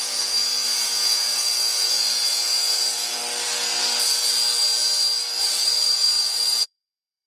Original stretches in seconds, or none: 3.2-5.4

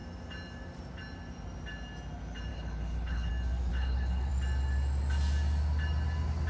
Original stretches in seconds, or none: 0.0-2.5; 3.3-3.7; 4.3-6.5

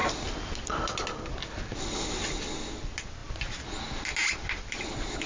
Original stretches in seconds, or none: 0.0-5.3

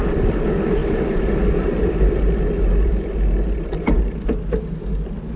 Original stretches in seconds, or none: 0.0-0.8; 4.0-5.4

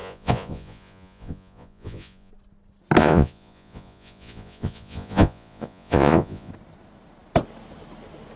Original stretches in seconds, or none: 2.3-3.0; 6.5-8.4

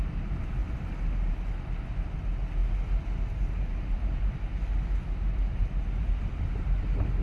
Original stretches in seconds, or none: 0.0-7.2

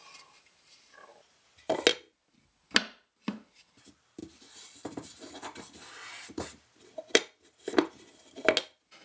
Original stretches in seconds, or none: 0.0-9.0